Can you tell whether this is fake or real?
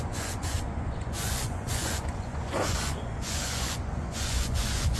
fake